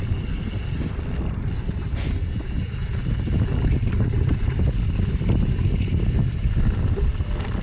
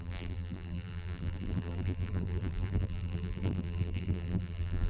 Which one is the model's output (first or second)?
second